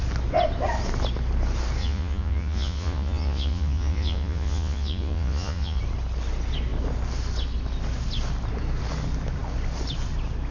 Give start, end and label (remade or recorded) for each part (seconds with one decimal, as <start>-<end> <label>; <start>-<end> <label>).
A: 0.0-1.8 recorded; 1.8-5.8 remade; 5.8-10.5 recorded